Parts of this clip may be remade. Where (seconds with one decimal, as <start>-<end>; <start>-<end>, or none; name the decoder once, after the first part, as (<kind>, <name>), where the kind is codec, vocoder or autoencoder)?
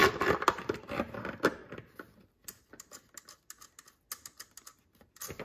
none